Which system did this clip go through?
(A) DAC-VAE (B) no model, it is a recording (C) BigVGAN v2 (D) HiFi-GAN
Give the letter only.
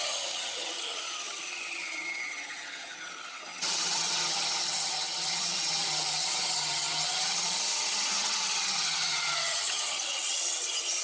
D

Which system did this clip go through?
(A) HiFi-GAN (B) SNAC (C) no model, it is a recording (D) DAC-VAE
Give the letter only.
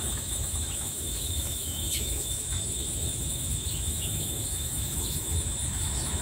D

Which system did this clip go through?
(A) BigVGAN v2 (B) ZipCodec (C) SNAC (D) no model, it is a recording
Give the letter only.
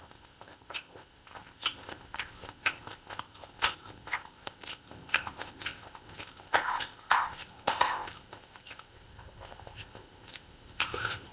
B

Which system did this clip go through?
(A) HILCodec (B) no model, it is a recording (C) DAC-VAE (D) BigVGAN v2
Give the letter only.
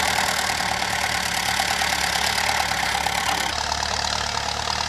B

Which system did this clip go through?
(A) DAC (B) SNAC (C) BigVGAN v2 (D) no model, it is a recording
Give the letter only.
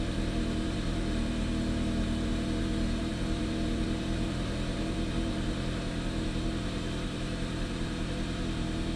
C